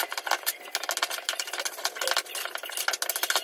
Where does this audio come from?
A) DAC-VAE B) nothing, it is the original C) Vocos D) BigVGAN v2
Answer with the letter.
B